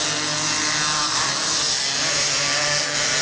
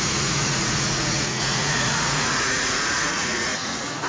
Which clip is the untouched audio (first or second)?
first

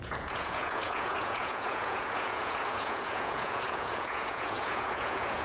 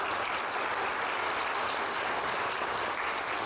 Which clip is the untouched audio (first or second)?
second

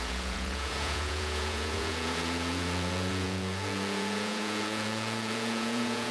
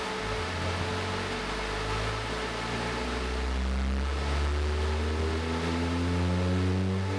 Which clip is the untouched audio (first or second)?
second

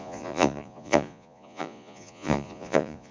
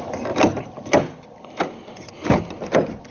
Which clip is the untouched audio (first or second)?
second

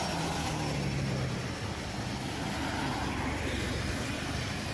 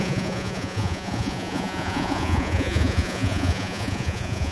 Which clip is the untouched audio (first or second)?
first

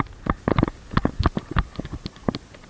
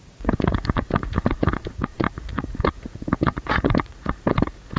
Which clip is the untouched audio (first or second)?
first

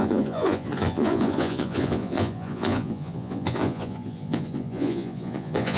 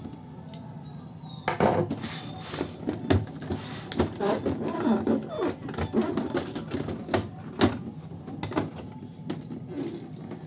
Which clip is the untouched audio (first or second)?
second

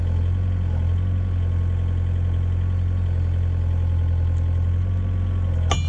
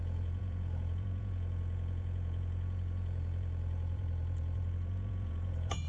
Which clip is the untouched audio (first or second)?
first